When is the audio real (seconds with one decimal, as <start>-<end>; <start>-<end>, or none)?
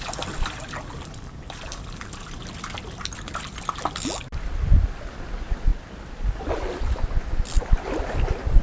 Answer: 0.0-8.6